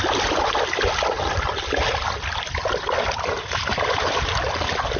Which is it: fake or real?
real